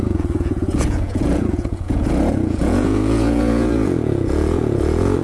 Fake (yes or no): yes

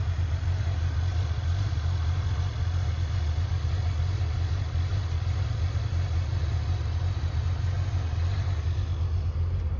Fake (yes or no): no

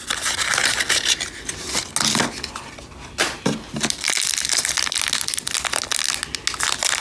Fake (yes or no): no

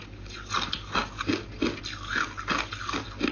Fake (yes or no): no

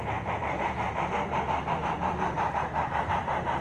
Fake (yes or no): yes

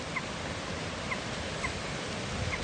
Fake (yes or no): no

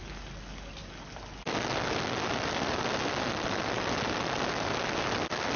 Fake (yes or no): no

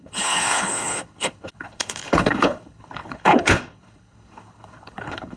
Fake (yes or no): yes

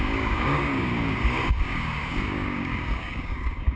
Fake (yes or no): yes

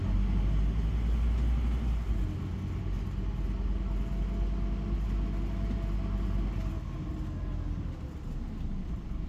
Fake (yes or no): no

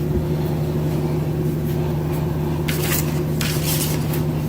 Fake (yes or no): no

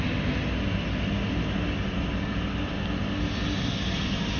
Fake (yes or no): no